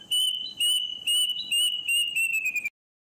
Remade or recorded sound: recorded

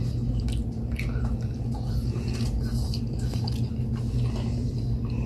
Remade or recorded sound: recorded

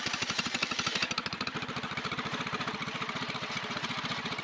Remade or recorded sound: remade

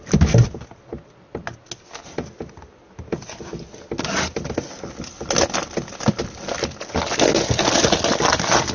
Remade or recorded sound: recorded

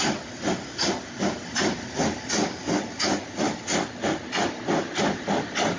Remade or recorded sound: recorded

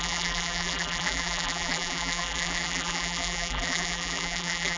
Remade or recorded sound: remade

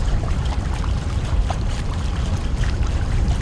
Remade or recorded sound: remade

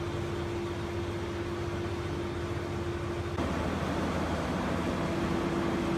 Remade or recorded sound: recorded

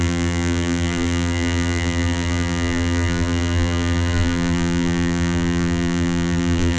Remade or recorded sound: remade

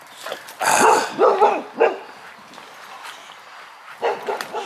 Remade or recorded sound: recorded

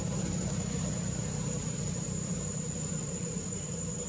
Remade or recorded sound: remade